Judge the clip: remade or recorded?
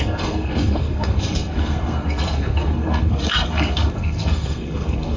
remade